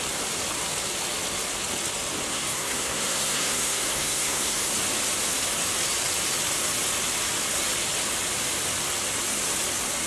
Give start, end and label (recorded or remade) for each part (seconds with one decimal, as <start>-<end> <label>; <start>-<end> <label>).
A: 0.0-2.3 recorded; 2.3-4.7 remade; 4.7-10.1 recorded